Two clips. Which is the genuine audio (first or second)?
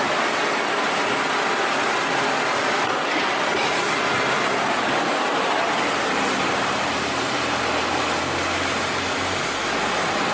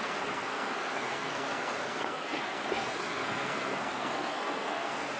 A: first